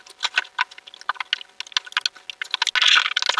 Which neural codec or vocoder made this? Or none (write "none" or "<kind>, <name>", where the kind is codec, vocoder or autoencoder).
none